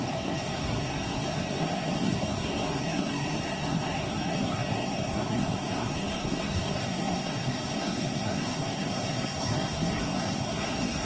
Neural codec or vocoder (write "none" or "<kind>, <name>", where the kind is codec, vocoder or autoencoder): codec, SNAC